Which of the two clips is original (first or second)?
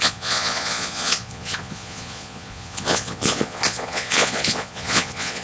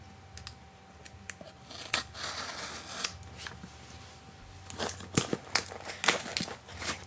second